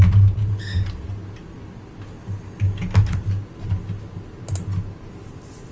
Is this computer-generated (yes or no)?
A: no